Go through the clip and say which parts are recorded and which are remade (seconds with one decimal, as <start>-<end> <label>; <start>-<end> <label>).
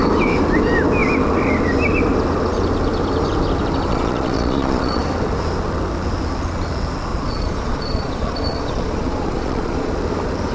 0.0-3.9 recorded; 3.9-5.0 remade; 5.0-7.1 recorded; 7.1-9.9 remade; 9.9-10.5 recorded